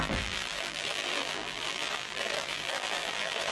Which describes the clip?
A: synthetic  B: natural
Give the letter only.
A